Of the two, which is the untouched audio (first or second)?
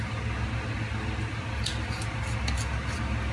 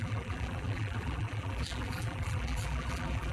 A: first